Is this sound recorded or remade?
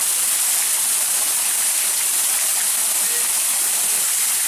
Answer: recorded